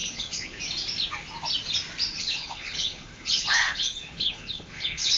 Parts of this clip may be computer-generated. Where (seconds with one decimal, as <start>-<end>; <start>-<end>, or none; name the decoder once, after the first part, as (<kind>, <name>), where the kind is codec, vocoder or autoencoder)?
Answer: 0.0-0.6 (codec, HILCodec); 2.1-5.2